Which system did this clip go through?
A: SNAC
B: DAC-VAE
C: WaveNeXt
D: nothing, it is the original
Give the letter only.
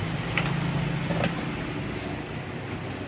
D